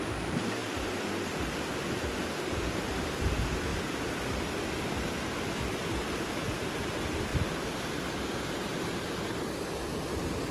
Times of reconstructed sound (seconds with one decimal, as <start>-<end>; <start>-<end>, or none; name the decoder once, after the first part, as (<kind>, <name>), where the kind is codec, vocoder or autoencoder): none